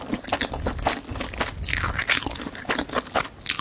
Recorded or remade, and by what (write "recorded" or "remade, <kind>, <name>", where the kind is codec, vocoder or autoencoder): recorded